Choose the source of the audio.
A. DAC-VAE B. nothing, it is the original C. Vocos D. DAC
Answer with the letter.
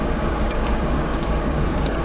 D